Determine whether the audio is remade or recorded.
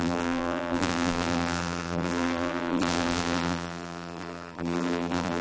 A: remade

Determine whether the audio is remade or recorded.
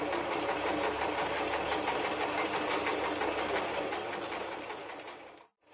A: recorded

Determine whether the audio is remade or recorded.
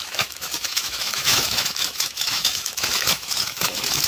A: remade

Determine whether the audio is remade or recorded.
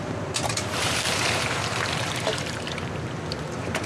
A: remade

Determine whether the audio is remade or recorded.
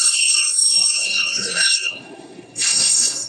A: remade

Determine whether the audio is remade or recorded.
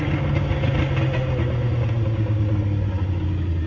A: recorded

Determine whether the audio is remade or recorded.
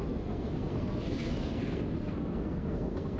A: remade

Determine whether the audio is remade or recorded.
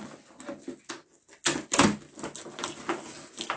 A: recorded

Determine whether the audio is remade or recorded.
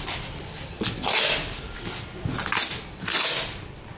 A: recorded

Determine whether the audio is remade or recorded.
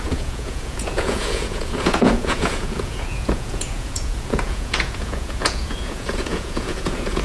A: remade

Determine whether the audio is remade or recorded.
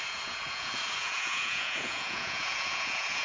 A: remade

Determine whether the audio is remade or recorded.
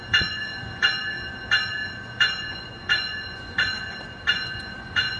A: remade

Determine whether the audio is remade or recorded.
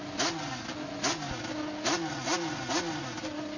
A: recorded